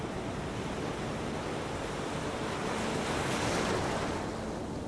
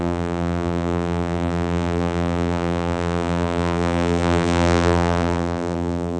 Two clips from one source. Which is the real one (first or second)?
first